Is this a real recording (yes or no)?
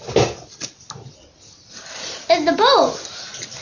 yes